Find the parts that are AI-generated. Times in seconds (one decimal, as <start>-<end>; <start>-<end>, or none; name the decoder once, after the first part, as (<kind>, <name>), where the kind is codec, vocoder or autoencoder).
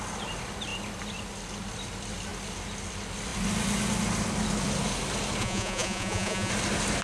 5.4-6.5 (vocoder, Vocos)